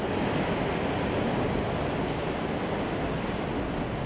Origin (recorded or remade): recorded